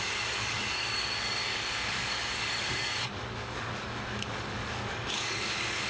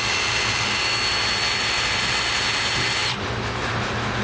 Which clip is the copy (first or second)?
first